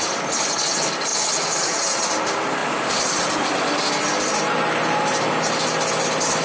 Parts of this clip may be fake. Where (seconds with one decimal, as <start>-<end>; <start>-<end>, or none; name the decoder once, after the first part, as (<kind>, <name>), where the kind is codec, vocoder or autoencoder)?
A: none